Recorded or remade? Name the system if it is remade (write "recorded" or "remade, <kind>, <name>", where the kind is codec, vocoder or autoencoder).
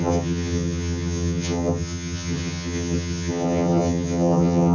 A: remade, vocoder, HiFi-GAN